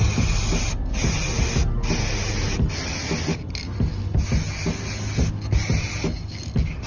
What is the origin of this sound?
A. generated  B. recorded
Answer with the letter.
B